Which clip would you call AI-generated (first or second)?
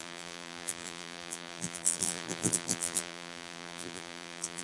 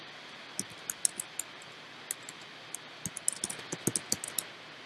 first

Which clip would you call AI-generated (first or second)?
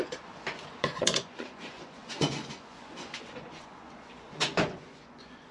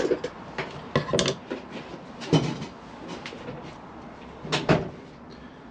first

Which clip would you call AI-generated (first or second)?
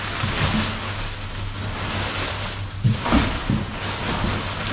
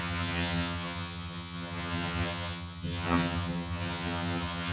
second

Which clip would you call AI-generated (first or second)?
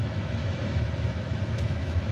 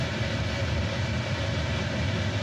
first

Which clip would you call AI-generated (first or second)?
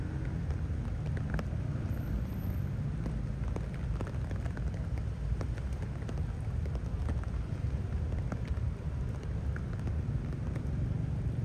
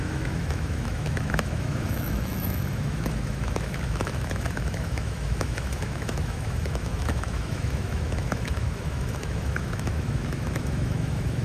second